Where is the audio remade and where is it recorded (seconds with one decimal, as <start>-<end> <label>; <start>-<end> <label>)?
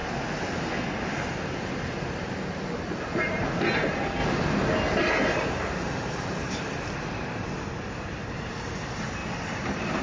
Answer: 0.0-1.9 recorded; 1.9-4.2 remade; 4.2-5.0 recorded; 5.0-9.2 remade; 9.2-10.0 recorded